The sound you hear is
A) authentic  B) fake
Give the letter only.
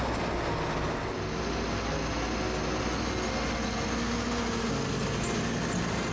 A